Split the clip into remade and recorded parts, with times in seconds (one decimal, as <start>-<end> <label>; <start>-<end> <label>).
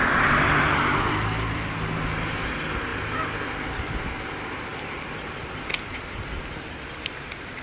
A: 0.0-7.6 recorded